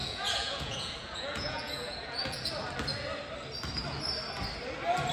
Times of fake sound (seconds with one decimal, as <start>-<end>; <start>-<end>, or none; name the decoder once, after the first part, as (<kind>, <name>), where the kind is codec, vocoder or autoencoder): 0.0-2.5 (vocoder, Vocos)